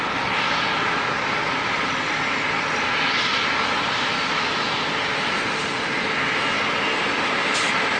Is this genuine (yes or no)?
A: yes